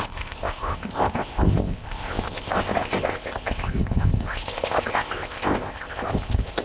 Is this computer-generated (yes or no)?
yes